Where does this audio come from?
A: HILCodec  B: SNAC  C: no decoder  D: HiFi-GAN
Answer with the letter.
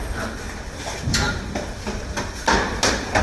C